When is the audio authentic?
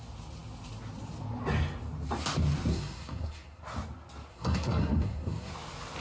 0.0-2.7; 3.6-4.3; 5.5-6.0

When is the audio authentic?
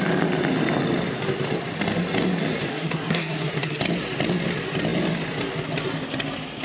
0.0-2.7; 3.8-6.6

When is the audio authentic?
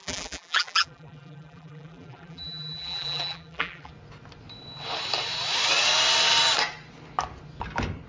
3.9-8.1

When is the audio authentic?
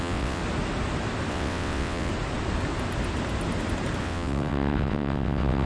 0.4-1.3; 2.1-4.0